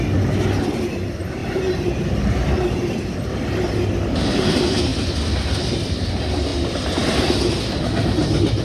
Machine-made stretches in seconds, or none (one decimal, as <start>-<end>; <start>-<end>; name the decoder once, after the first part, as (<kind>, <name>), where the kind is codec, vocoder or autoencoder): 1.4-2.5 (vocoder, BigVGAN v2)